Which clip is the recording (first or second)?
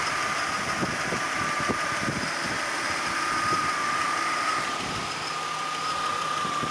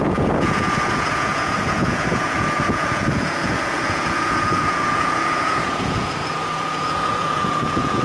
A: first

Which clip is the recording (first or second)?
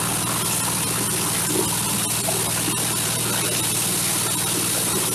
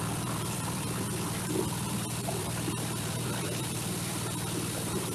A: first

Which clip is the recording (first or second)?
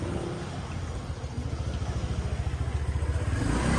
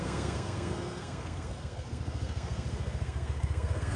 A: first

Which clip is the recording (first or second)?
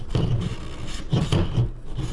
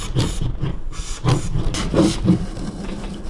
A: first